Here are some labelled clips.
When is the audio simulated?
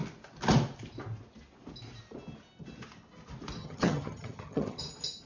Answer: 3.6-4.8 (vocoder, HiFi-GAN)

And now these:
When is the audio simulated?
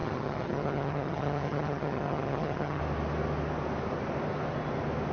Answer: 0.0-2.8 (vocoder, HiFi-GAN)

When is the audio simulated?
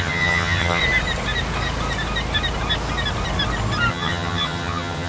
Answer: 0.0-0.8 (vocoder, HiFi-GAN); 3.9-5.1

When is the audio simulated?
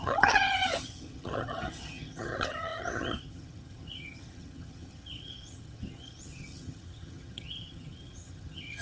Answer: 0.0-8.8 (vocoder, HiFi-GAN)